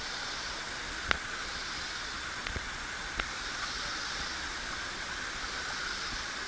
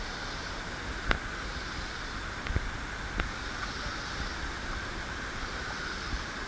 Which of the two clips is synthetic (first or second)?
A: first